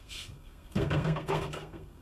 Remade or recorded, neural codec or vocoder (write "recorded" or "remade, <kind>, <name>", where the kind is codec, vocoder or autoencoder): remade, codec, SNAC